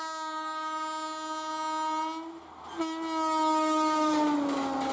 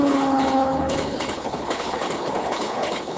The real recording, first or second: first